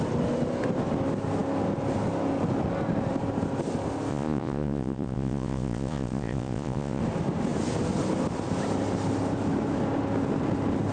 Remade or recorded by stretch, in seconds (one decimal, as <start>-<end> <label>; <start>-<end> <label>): 0.0-4.1 recorded; 4.1-7.0 remade; 7.0-10.9 recorded